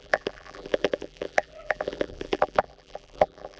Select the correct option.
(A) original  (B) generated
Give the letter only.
B